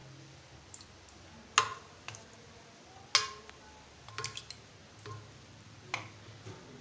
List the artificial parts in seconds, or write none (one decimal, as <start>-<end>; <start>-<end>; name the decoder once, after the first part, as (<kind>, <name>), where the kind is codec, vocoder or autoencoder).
none